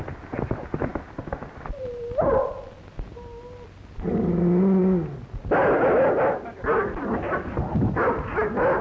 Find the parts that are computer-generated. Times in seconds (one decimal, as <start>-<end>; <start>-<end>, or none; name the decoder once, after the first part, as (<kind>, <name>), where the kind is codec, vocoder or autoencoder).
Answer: none